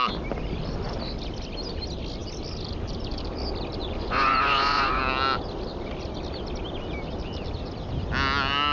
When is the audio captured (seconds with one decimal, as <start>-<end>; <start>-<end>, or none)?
0.0-3.8; 5.0-8.7